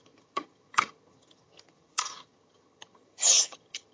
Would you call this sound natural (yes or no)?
no